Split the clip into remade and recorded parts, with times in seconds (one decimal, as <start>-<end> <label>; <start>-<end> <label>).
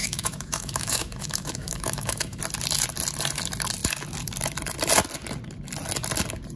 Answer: 0.0-2.4 remade; 2.4-6.6 recorded